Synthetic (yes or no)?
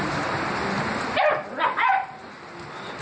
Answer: no